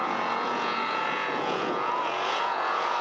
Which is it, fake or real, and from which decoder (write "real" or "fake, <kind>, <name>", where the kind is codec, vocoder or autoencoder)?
fake, vocoder, Vocos